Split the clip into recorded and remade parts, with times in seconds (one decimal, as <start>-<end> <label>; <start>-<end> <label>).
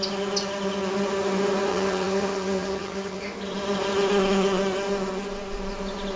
0.0-1.7 recorded; 1.7-3.2 remade; 3.2-6.2 recorded